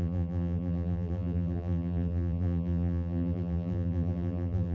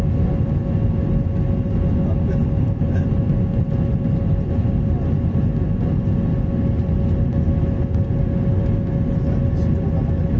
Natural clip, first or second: second